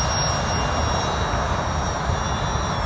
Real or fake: real